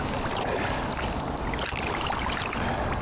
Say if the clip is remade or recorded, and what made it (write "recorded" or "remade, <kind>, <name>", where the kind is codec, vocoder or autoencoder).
recorded